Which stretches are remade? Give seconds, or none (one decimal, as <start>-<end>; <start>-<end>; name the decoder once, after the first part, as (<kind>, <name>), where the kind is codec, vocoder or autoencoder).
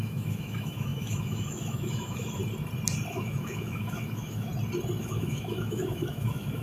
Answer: 0.0-2.4 (autoencoder, DAC-VAE); 3.1-4.5; 5.0-6.6